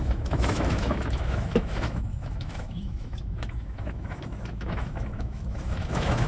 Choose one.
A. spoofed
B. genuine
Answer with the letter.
A